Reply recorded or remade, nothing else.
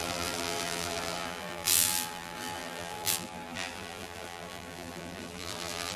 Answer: remade